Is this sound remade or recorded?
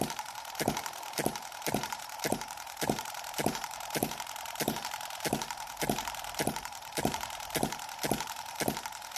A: remade